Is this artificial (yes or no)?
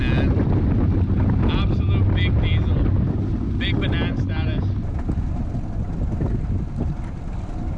no